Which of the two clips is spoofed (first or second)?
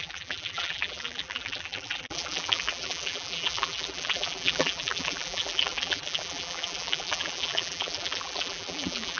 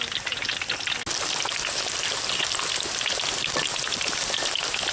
first